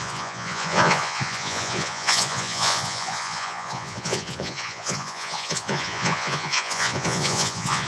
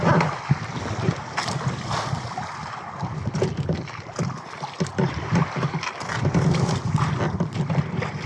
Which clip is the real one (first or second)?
second